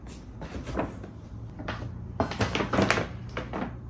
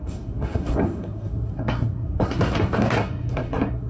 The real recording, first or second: first